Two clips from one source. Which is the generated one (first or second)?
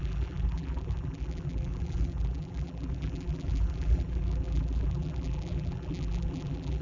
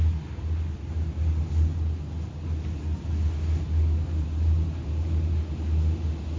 first